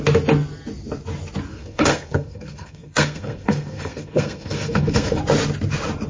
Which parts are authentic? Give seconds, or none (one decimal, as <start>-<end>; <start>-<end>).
0.0-1.5; 5.2-6.1